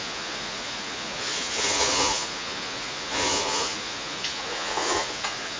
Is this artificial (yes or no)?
yes